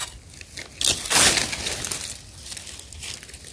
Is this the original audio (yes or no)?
yes